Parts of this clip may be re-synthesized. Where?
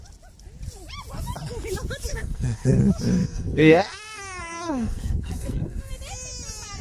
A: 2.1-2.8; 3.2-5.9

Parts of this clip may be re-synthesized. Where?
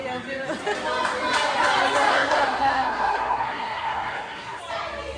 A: 2.1-4.6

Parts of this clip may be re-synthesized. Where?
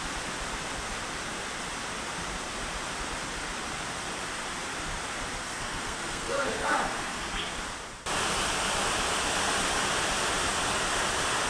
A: 5.4-7.6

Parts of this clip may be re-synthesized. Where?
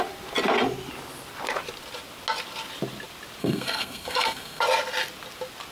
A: 3.4-4.6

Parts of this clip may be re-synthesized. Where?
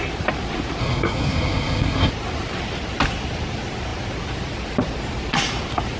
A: 0.8-2.1